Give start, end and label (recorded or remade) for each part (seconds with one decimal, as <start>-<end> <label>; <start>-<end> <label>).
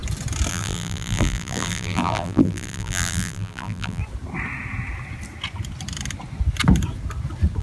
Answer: 0.0-0.5 recorded; 0.5-4.0 remade; 4.0-7.6 recorded